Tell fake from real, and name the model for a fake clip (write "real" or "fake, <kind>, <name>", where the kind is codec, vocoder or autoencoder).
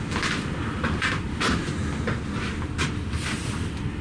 real